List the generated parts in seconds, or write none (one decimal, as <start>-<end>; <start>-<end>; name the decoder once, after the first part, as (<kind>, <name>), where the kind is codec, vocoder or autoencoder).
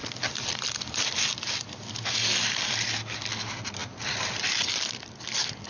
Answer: none